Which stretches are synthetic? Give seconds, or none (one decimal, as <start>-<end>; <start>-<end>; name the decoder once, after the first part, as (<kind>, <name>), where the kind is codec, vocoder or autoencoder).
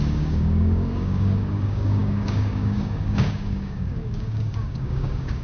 0.0-5.4 (codec, DAC)